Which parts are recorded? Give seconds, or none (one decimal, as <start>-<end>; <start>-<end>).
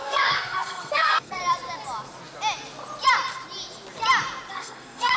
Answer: 1.4-4.5